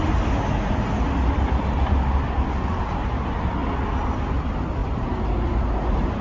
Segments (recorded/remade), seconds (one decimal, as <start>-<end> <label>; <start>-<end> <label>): 0.0-6.2 recorded